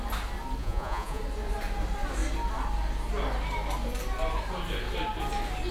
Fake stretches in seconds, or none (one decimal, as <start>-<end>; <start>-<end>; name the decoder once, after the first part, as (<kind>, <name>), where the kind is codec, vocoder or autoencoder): 0.6-1.2 (vocoder, Vocos)